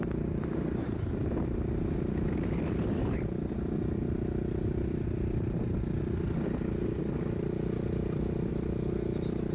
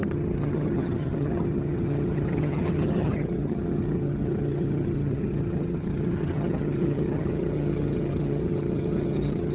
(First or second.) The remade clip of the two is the second